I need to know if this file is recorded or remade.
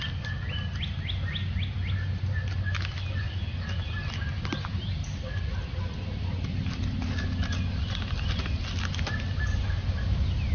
recorded